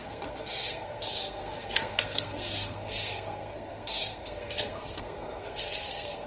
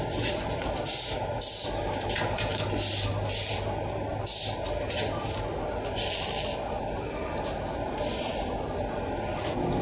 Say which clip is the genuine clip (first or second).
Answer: second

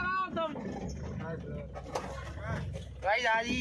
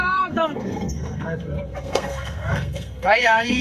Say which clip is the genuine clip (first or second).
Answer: first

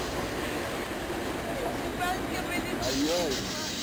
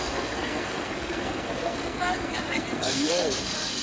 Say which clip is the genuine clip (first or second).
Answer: first